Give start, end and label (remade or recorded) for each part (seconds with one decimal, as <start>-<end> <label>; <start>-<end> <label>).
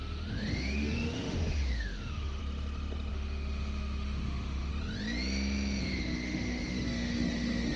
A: 0.0-2.4 remade; 2.4-3.1 recorded; 3.1-4.7 remade; 4.7-5.8 recorded; 5.8-7.8 remade